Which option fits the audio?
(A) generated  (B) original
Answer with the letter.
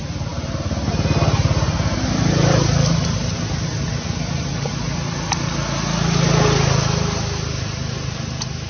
B